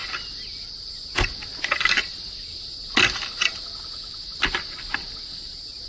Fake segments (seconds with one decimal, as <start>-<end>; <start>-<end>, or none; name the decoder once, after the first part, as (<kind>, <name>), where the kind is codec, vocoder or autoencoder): none